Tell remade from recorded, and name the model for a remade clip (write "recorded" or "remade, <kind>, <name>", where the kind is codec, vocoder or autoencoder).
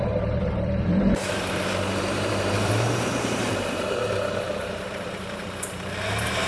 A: remade, vocoder, BigVGAN v2